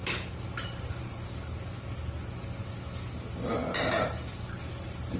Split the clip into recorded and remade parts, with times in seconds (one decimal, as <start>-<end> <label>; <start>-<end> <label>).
0.0-5.2 recorded